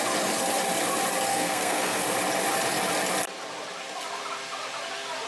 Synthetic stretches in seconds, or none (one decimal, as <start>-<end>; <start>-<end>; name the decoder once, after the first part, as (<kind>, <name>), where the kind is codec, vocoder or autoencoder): 1.3-2.0 (codec, SNAC)